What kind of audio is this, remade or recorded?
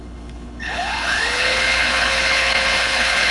remade